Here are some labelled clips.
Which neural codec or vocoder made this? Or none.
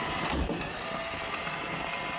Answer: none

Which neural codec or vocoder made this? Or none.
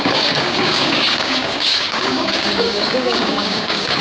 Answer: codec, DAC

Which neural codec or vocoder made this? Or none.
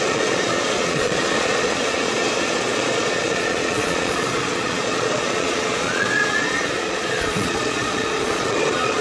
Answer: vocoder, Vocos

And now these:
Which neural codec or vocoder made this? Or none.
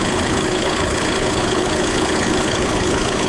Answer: codec, HILCodec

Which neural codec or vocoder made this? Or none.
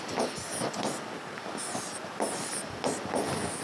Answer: none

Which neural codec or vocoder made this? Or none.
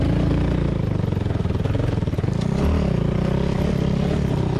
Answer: none